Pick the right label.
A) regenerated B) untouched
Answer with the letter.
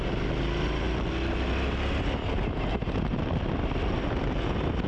B